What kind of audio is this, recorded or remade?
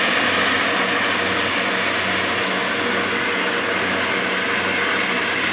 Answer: recorded